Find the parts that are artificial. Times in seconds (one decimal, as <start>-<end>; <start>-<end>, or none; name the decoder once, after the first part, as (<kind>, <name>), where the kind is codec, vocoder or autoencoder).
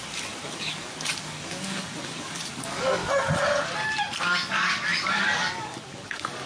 0.0-3.0 (codec, DAC); 4.2-6.5